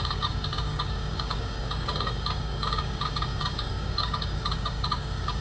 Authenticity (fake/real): fake